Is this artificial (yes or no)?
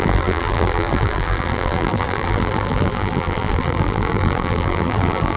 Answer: yes